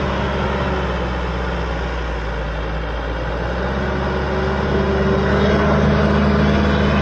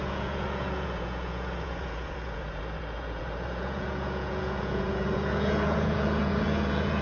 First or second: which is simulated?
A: second